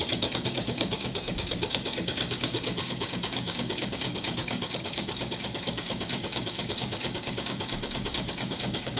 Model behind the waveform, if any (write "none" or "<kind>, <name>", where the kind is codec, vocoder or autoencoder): codec, DAC